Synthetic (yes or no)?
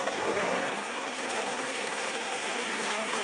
yes